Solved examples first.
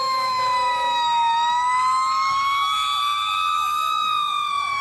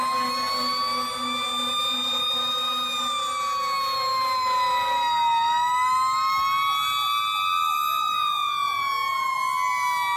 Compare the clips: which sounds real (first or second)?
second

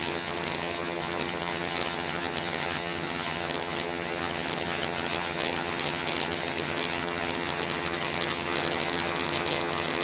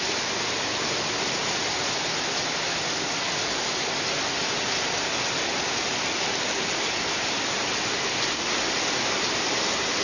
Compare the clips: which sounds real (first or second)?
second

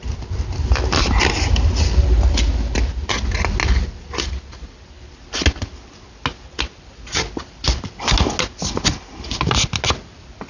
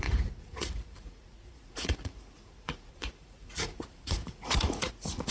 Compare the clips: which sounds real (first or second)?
first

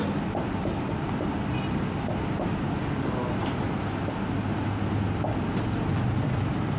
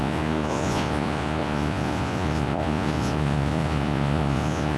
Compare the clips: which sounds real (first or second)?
first